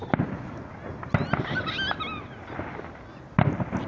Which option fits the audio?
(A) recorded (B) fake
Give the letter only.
A